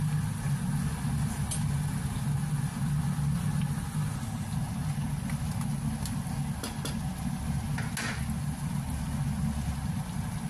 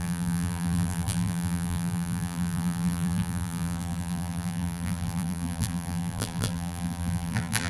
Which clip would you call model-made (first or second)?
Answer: second